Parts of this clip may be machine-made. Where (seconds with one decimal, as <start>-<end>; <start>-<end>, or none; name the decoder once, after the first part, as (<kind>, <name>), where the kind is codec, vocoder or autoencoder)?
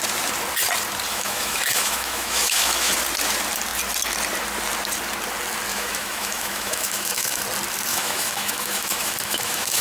1.1-2.9 (autoencoder, DAC-VAE); 5.7-7.4; 7.9-9.8